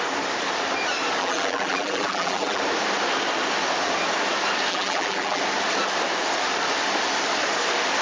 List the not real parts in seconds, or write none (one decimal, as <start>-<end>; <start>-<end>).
1.2-2.6; 4.7-5.4